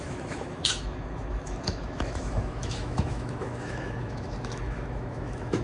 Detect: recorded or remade remade